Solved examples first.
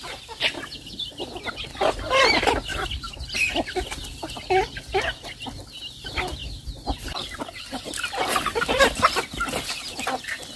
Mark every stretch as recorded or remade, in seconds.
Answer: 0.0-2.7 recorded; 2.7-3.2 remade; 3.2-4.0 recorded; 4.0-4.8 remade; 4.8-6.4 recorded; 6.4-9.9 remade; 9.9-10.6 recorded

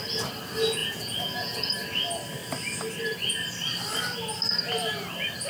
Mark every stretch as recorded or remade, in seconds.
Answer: 0.0-0.8 recorded; 0.8-1.7 remade; 1.7-5.5 recorded

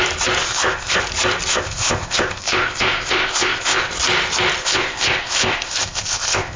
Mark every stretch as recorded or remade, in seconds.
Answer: 0.0-0.4 recorded; 0.4-1.0 remade; 1.0-1.5 recorded; 1.5-3.9 remade; 3.9-4.6 recorded; 4.6-6.6 remade

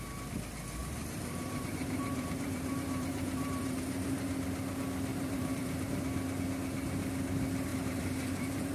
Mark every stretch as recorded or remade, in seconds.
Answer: 0.0-0.8 recorded; 0.8-4.4 remade; 4.4-5.1 recorded; 5.1-6.0 remade; 6.0-7.7 recorded; 7.7-8.7 remade

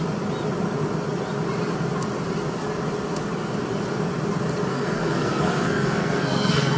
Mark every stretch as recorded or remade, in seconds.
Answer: 0.0-4.7 recorded; 4.7-6.8 remade

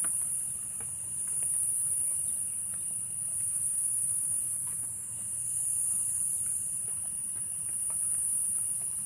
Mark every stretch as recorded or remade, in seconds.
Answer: 0.0-3.3 recorded; 3.3-5.4 remade; 5.4-9.1 recorded

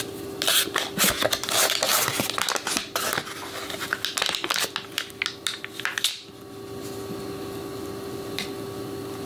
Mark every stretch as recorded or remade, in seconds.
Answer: 0.0-9.3 recorded

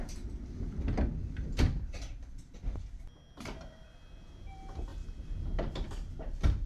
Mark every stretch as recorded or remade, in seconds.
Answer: 0.0-6.7 recorded